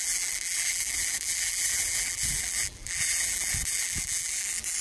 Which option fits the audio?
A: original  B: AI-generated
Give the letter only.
B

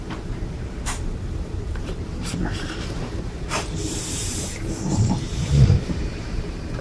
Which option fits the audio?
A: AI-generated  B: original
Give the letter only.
A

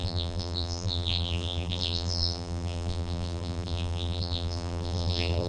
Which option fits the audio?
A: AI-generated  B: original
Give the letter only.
A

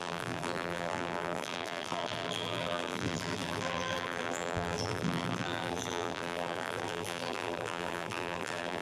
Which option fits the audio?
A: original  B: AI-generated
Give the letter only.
B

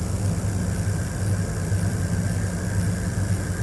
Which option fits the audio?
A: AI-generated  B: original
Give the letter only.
B